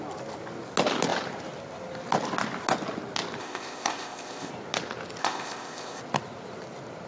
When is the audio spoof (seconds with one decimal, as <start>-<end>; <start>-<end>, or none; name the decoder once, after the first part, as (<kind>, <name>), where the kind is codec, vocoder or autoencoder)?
3.4-4.5 (codec, ZipCodec); 5.2-6.0